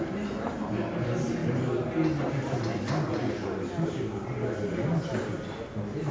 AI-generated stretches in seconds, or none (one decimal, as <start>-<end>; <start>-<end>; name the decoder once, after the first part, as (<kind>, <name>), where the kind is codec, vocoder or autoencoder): none